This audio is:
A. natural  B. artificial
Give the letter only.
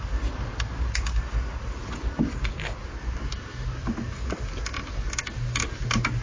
A